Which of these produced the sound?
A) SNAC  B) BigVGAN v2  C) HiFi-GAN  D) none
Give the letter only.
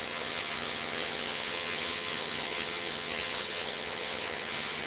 C